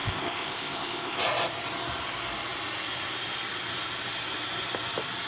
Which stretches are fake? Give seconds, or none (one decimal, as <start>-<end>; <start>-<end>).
0.0-1.2